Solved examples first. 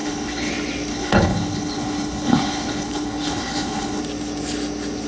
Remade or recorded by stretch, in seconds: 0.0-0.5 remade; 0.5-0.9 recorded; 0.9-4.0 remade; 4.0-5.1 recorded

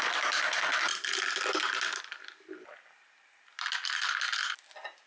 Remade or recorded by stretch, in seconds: 0.0-5.1 recorded

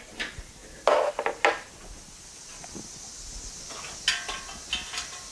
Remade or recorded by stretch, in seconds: 0.0-5.3 recorded

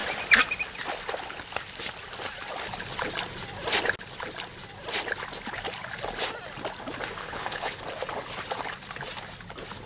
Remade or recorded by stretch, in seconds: 0.0-7.2 recorded; 7.2-7.8 remade; 7.8-9.9 recorded

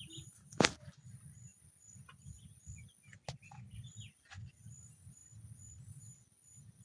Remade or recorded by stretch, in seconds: 0.0-6.8 recorded